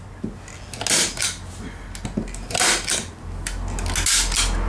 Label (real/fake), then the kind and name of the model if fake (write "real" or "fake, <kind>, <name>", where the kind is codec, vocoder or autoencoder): real